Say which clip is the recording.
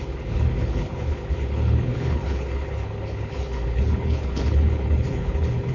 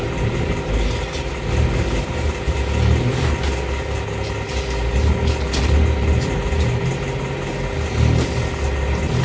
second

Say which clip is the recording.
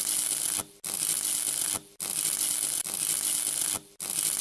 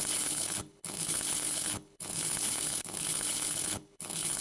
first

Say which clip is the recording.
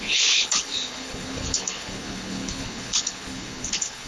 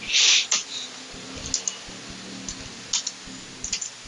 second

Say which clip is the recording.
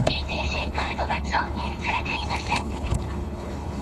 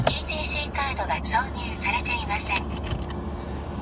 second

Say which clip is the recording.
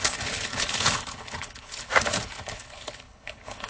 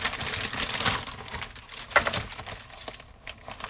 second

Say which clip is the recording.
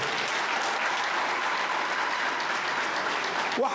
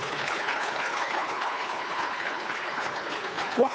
first